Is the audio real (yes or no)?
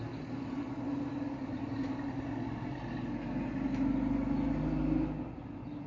yes